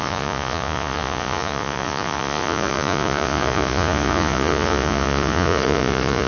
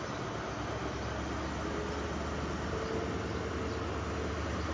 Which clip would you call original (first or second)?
second